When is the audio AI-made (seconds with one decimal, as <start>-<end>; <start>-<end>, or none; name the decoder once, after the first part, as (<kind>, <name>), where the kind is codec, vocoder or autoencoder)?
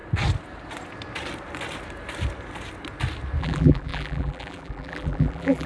3.4-5.7 (vocoder, BigVGAN v2)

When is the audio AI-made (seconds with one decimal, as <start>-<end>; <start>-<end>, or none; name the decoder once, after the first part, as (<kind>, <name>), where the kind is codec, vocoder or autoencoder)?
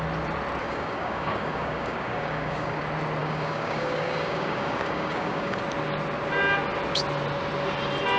0.6-2.8 (codec, DAC); 3.2-5.6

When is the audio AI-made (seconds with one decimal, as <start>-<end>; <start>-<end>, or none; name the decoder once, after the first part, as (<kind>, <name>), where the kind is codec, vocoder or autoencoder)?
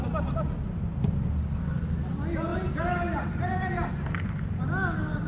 none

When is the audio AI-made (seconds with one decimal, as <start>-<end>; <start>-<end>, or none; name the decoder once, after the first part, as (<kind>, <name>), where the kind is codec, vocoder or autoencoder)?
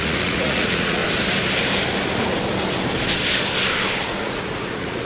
0.0-1.0 (vocoder, Vocos); 4.1-5.1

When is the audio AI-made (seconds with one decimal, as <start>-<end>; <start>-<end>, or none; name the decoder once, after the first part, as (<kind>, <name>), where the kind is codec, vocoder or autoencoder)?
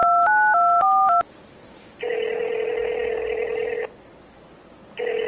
none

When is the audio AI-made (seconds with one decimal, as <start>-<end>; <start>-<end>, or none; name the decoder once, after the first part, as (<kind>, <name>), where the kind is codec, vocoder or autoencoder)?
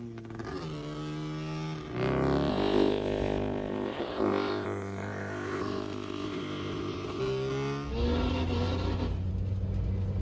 2.5-7.2 (codec, ZipCodec)